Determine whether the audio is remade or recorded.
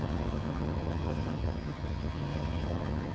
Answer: remade